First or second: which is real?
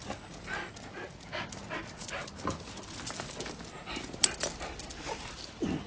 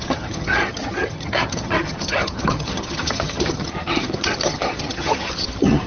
first